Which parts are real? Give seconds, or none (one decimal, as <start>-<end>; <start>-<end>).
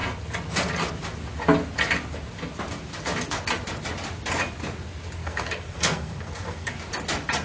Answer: 0.0-5.2; 6.7-7.4